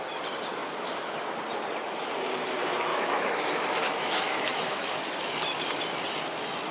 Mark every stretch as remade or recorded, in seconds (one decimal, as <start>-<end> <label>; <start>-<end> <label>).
0.0-0.6 recorded; 0.6-1.2 remade; 1.2-2.9 recorded; 2.9-5.0 remade; 5.0-6.7 recorded